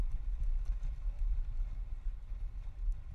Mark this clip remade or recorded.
recorded